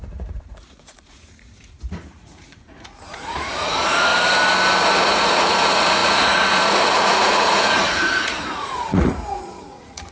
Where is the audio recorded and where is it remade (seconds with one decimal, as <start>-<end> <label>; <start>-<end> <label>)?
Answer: 0.0-4.1 remade; 4.1-4.8 recorded; 4.8-10.1 remade